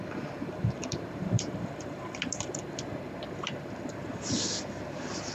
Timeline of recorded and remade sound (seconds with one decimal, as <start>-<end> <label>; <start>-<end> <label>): 0.0-0.8 recorded; 0.8-4.0 remade; 4.0-5.3 recorded

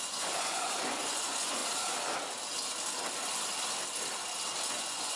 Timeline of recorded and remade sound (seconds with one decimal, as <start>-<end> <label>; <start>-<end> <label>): 0.0-1.6 remade; 1.6-4.7 recorded; 4.7-5.2 remade